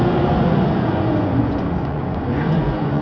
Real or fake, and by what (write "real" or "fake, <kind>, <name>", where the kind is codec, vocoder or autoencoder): fake, vocoder, Vocos